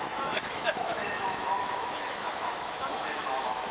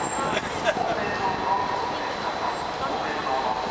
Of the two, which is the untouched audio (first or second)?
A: second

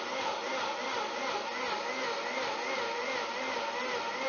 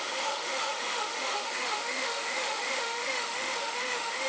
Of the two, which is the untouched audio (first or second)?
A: first